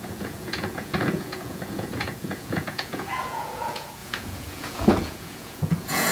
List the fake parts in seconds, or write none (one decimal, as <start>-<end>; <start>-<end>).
0.0-6.1